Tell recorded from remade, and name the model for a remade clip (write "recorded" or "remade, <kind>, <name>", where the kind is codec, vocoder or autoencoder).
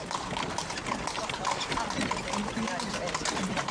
recorded